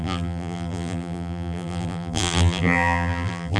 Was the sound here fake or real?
fake